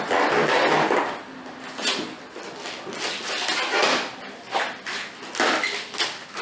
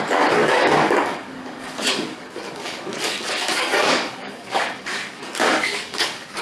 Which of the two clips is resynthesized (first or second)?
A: second